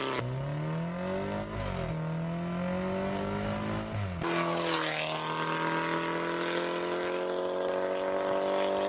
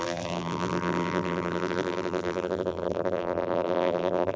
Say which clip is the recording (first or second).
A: first